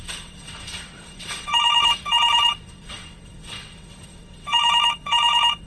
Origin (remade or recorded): remade